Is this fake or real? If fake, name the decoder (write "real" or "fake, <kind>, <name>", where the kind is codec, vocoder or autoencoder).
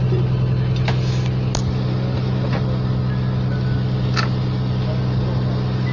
real